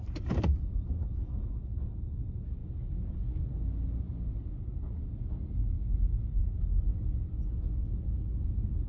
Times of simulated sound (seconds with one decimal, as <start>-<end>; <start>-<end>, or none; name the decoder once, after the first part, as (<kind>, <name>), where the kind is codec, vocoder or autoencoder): none